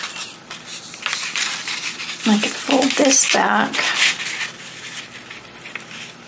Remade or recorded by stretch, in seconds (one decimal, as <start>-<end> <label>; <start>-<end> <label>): 0.0-6.3 recorded